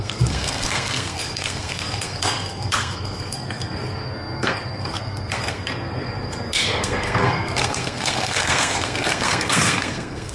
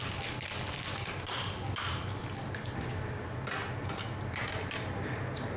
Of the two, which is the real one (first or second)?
second